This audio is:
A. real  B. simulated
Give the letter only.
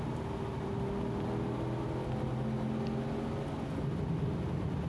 A